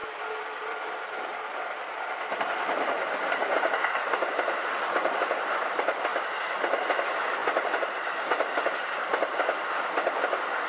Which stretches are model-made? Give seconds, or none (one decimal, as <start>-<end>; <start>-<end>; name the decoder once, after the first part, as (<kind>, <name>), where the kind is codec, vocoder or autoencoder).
0.0-6.1 (vocoder, BigVGAN v2); 7.0-7.4; 9.1-10.7